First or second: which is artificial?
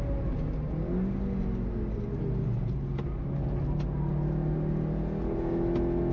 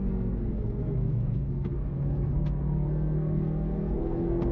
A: second